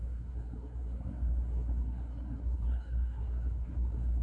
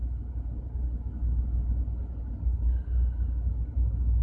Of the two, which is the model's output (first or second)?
first